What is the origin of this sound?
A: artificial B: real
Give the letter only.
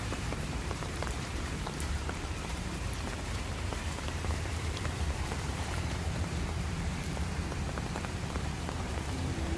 A